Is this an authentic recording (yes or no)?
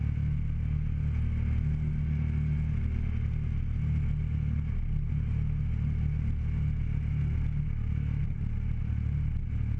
yes